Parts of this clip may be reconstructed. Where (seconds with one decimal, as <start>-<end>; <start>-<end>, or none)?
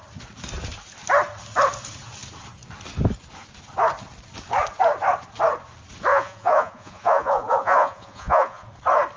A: 6.1-8.7